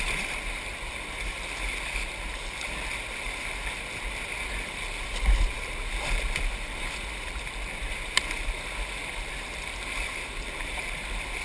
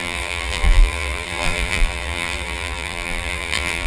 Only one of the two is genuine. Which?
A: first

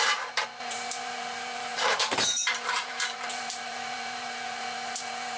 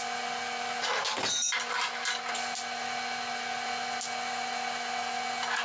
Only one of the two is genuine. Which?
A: second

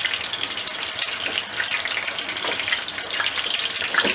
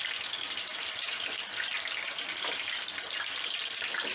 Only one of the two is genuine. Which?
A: first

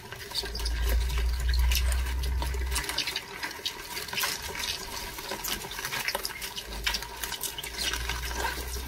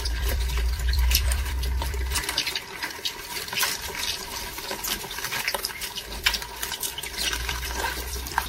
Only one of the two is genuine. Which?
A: first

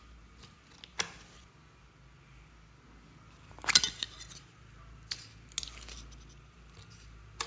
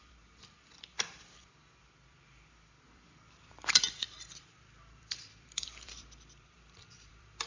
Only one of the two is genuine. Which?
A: first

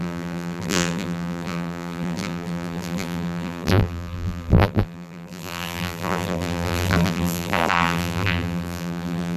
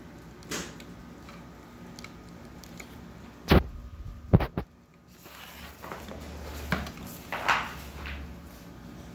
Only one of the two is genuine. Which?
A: second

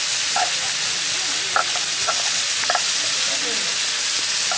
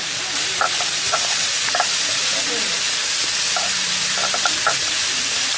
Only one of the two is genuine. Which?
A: first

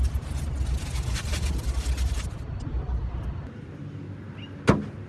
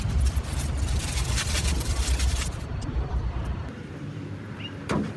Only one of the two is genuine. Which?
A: first